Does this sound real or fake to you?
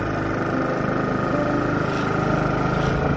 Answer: real